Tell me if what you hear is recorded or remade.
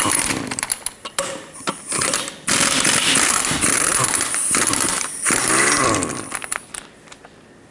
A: remade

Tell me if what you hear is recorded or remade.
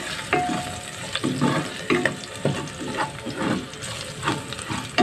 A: recorded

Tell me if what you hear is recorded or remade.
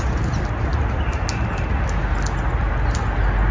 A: recorded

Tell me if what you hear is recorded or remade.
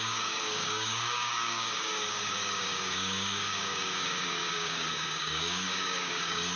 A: remade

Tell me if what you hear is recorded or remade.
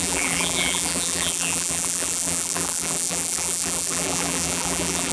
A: remade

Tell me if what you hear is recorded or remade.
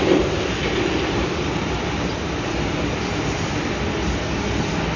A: recorded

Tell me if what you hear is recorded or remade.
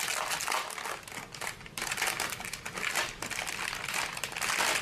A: recorded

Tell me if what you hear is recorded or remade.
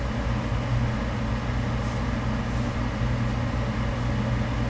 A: recorded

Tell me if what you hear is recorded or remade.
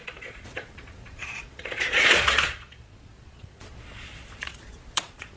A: remade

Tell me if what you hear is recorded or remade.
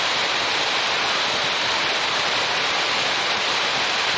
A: remade